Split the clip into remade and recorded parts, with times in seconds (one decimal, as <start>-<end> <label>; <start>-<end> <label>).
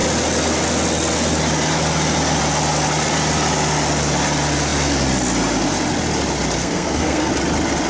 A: 0.0-6.6 recorded; 6.6-7.3 remade; 7.3-7.9 recorded